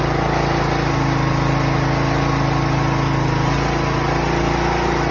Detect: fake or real real